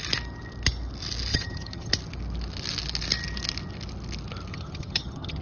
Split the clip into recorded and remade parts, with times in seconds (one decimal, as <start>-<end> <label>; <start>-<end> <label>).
0.0-1.3 recorded; 1.3-1.9 remade; 1.9-4.5 recorded; 4.5-5.4 remade